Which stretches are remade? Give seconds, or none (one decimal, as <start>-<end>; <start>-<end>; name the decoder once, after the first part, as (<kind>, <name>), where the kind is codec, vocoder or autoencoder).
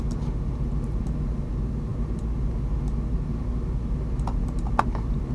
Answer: none